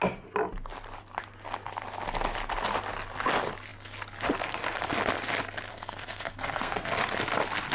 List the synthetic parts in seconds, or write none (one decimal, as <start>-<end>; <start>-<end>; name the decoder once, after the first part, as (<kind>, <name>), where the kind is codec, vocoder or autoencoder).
5.7-6.9 (codec, SNAC)